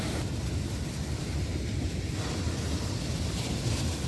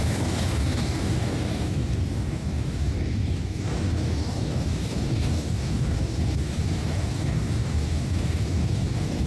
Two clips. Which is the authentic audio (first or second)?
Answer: first